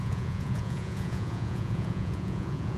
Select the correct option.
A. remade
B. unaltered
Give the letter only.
A